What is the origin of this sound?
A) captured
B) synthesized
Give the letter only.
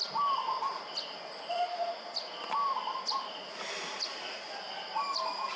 A